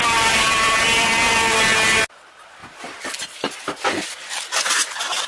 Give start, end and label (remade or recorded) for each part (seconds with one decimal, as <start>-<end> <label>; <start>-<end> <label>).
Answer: 0.0-1.6 remade; 1.6-2.6 recorded; 2.6-4.6 remade; 4.6-5.3 recorded